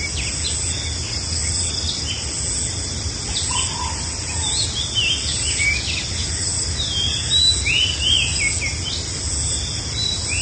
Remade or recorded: recorded